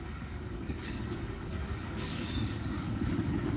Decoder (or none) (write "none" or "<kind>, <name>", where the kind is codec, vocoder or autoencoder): codec, DAC